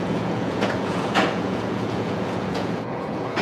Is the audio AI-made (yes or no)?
yes